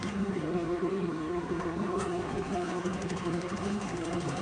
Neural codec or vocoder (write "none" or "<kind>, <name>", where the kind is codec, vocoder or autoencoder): codec, SNAC